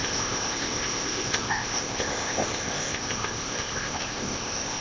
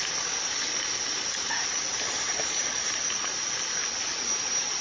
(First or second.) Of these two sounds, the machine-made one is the first